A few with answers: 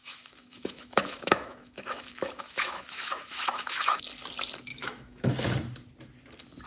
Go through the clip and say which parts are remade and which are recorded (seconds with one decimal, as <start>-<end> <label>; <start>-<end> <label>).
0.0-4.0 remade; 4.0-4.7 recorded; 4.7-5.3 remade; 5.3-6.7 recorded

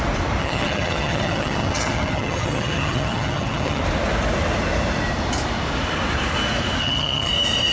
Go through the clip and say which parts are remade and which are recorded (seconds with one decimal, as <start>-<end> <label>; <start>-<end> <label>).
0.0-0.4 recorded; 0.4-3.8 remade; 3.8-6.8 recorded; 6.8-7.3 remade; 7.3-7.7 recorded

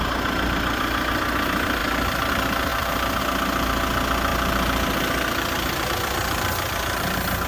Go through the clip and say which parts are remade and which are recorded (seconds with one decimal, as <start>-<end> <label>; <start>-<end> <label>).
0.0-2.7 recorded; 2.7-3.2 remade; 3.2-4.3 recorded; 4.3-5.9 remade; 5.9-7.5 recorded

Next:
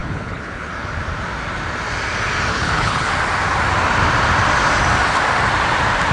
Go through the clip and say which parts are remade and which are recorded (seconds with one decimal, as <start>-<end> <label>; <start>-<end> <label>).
0.0-0.7 remade; 0.7-2.5 recorded; 2.5-3.1 remade; 3.1-6.1 recorded